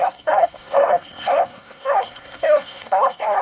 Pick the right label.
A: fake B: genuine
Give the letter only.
A